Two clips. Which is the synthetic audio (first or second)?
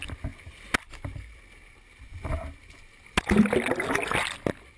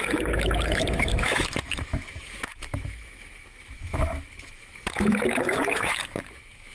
second